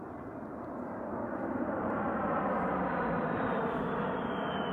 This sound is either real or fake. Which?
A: fake